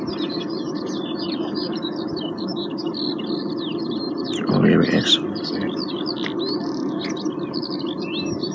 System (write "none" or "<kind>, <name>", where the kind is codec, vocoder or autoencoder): none